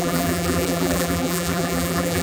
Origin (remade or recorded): remade